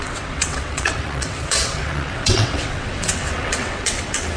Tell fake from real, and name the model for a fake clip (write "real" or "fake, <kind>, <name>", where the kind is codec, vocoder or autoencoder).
fake, vocoder, WaveNeXt